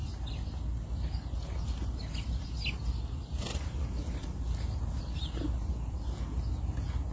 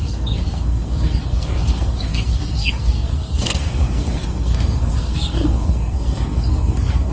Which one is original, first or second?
first